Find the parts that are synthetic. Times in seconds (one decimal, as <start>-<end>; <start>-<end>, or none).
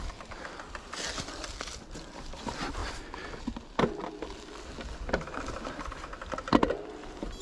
none